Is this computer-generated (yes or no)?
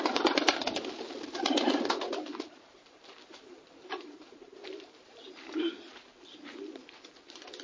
yes